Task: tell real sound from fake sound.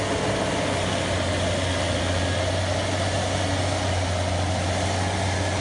real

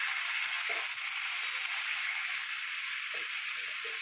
real